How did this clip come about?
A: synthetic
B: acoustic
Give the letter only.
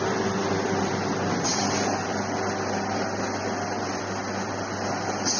B